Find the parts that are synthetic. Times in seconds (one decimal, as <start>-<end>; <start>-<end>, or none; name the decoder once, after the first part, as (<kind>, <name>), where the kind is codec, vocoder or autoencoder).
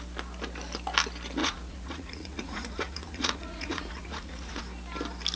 1.4-4.6 (vocoder, Vocos)